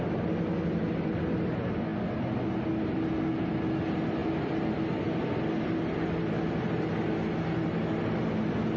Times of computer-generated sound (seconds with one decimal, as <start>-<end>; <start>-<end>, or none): none